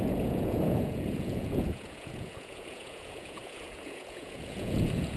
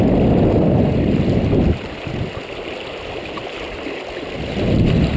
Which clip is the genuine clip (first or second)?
second